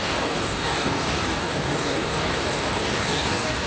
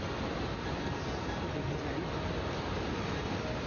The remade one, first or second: first